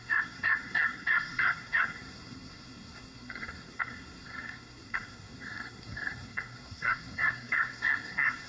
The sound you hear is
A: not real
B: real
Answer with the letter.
A